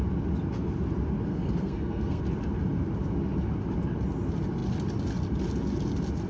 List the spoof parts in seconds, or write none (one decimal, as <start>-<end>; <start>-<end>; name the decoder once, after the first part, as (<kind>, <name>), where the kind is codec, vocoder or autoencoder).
1.3-2.2 (codec, SNAC)